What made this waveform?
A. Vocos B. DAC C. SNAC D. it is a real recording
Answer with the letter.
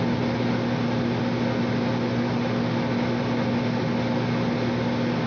D